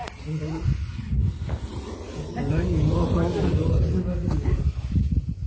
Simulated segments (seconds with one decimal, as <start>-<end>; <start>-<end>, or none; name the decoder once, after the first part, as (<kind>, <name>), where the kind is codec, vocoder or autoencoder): none